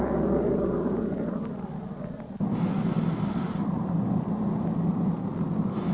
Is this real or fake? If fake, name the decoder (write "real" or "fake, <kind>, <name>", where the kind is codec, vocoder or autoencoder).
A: real